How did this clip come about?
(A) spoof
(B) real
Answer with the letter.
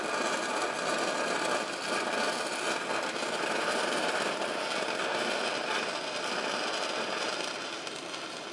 B